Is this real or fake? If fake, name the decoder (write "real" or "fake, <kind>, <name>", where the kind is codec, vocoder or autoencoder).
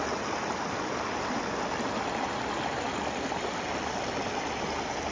real